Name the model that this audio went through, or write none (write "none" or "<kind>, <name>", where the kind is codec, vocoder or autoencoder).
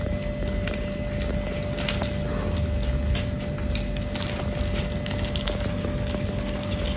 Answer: none